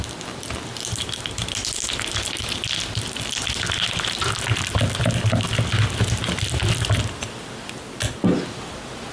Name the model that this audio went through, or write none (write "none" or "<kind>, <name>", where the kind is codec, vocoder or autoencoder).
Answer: none